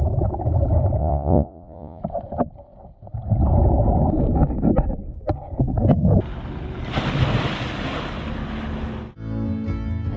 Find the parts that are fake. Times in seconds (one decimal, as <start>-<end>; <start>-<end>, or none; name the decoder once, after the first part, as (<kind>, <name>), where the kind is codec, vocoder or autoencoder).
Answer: 1.0-2.0 (vocoder, Vocos)

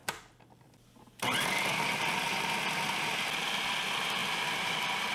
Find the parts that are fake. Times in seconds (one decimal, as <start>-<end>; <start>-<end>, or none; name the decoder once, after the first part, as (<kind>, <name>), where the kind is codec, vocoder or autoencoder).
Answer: none

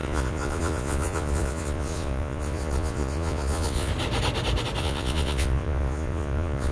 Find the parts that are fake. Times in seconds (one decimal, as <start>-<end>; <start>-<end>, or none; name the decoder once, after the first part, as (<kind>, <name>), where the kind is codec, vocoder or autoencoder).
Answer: 0.0-3.9 (vocoder, Vocos); 4.8-6.7